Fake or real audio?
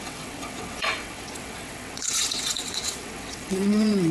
fake